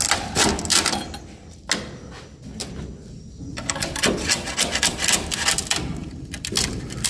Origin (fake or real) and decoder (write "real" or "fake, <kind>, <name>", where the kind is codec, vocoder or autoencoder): real